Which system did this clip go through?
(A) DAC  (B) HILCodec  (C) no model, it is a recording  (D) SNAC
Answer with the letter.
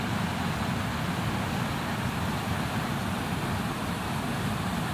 C